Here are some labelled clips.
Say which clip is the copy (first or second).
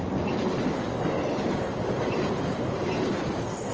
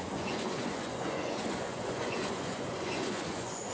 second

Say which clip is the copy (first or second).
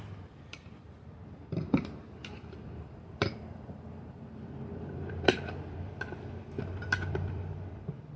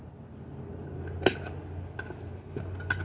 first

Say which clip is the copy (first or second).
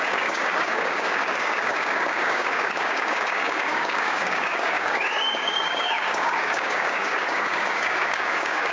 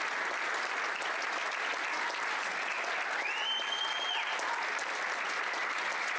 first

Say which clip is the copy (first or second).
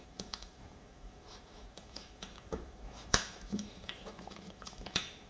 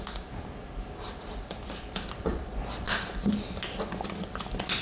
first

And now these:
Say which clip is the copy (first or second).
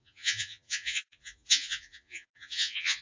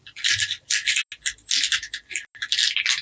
first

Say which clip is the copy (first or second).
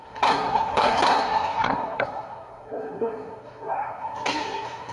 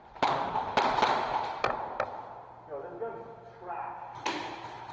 first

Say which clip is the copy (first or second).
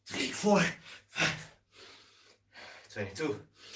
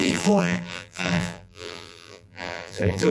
second